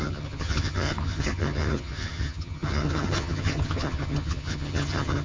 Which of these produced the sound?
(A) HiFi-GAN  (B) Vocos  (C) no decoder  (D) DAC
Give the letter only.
A